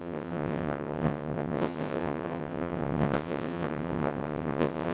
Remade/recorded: remade